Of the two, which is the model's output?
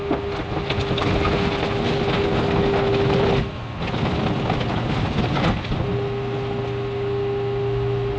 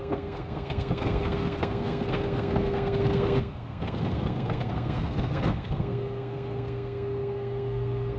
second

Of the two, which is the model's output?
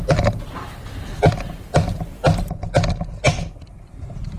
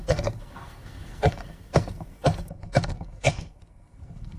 second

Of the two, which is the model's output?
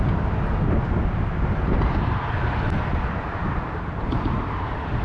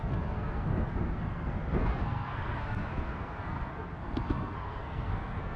second